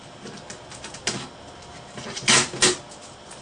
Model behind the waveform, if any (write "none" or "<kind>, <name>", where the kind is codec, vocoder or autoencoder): none